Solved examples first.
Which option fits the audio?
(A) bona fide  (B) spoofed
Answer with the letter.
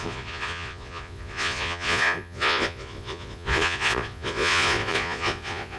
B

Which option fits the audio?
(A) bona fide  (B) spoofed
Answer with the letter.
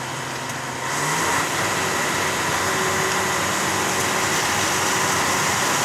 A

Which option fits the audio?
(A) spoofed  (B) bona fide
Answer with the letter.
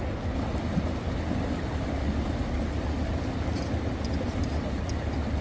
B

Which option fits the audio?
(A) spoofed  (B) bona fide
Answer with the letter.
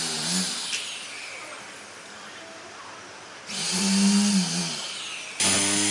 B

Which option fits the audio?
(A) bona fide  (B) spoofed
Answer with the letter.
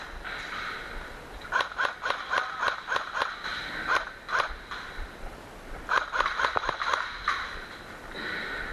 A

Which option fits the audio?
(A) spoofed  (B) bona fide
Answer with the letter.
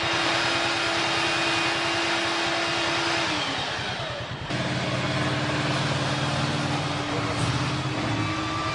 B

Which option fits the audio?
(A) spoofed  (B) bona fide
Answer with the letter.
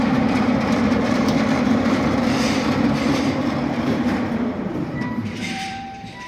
A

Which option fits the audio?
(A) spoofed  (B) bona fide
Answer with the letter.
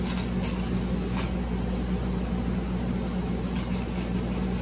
B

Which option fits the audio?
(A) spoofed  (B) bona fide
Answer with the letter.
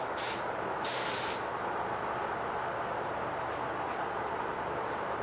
B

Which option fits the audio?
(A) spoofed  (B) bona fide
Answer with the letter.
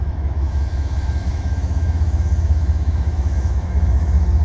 A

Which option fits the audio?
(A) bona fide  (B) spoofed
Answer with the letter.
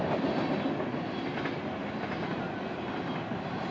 A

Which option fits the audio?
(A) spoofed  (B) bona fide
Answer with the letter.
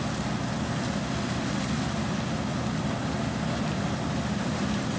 B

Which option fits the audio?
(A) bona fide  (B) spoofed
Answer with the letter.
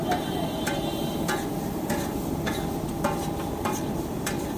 B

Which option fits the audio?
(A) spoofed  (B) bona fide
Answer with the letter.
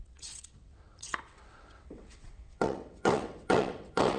A